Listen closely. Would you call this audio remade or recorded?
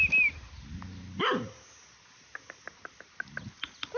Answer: recorded